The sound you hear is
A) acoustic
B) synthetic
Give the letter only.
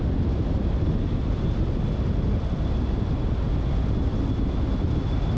A